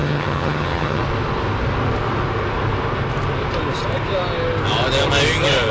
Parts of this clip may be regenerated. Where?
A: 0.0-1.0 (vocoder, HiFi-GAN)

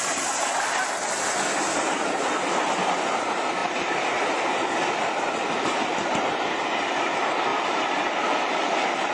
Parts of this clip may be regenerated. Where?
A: none

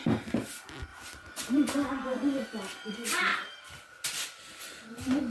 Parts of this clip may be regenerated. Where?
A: none

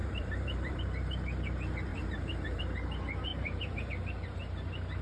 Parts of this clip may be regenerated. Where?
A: 0.0-0.8 (vocoder, BigVGAN v2); 1.9-2.6; 3.3-3.9